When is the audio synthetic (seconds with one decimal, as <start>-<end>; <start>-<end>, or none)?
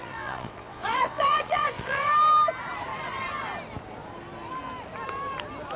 0.0-2.1